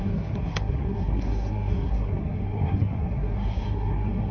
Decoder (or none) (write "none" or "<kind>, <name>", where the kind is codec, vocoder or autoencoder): codec, SNAC